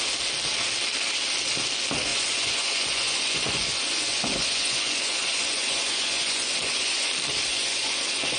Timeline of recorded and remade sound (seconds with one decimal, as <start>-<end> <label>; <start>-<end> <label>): 0.0-2.1 recorded; 2.1-7.1 remade; 7.1-7.5 recorded; 7.5-8.4 remade